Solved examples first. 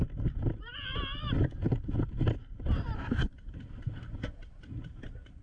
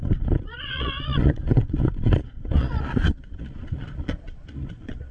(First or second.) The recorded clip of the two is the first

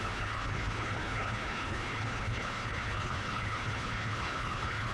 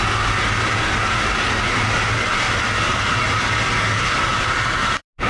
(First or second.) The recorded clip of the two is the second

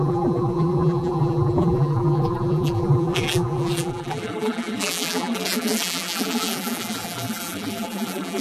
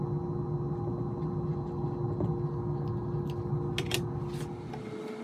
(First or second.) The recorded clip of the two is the second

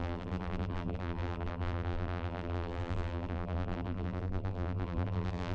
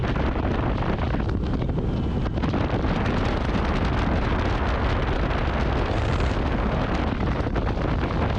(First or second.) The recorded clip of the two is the second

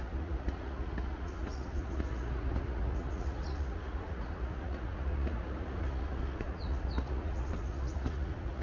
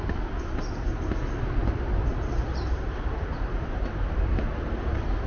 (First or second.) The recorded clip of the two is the second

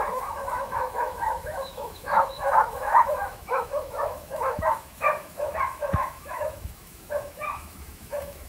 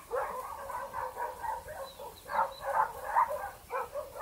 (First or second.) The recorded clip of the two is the second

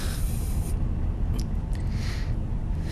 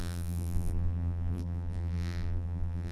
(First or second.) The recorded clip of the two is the first